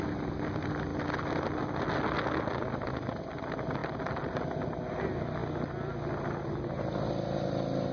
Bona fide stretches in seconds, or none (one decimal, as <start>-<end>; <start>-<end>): 0.0-7.9